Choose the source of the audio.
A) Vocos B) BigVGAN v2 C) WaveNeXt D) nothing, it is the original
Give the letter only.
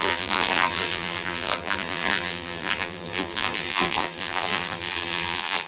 B